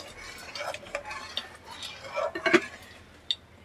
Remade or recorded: recorded